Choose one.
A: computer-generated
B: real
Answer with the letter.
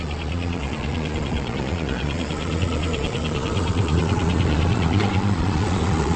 A